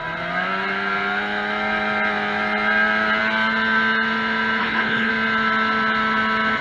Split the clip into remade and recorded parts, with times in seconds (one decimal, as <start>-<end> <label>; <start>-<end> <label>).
0.0-4.6 recorded; 4.6-5.1 remade; 5.1-6.6 recorded